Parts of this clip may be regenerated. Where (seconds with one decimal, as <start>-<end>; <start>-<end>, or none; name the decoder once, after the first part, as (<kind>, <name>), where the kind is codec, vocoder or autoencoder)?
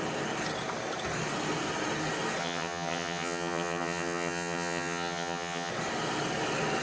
2.4-5.7 (vocoder, HiFi-GAN)